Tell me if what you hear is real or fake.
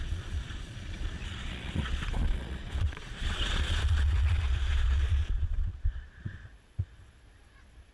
fake